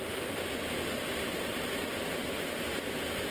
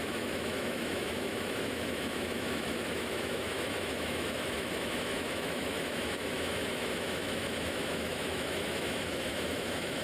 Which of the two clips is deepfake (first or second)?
second